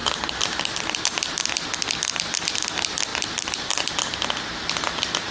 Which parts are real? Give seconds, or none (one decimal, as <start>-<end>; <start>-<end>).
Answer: 1.0-3.1; 3.9-5.3